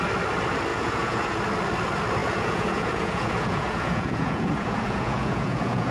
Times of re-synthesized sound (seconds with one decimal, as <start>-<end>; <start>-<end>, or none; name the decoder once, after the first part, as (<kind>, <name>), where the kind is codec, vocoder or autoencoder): 0.7-1.4 (vocoder, Vocos); 2.2-5.9